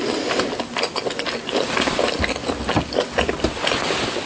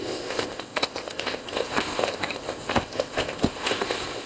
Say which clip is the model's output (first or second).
second